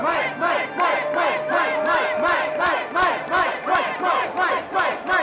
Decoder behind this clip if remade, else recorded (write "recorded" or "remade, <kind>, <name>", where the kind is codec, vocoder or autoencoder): recorded